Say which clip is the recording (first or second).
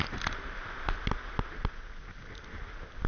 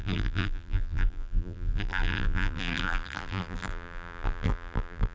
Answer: first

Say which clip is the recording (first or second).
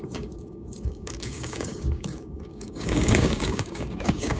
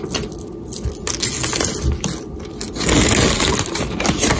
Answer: second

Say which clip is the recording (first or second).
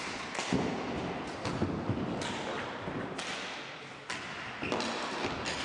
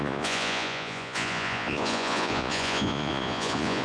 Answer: first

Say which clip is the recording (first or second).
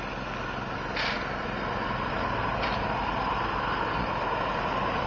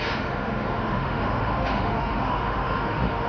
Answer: first